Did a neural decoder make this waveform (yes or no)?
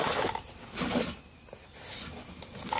no